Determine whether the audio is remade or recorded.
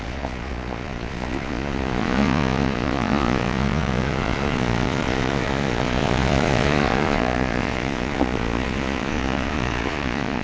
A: remade